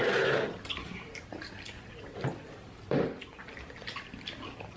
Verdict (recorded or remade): recorded